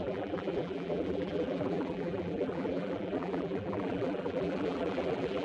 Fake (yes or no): yes